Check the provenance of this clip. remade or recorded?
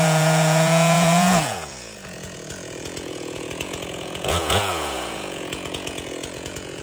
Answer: remade